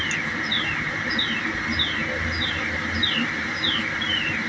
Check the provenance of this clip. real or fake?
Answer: real